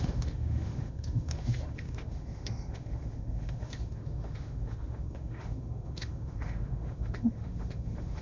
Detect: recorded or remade remade